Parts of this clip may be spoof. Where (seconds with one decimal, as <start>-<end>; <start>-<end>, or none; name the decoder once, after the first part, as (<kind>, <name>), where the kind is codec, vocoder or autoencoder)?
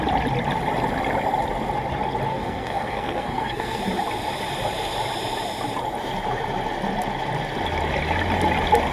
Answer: 2.3-3.8 (codec, SNAC)